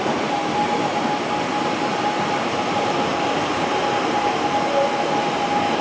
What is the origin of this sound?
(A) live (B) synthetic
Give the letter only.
B